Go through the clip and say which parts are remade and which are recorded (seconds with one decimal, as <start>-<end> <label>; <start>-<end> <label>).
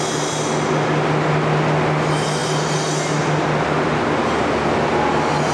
0.0-5.5 recorded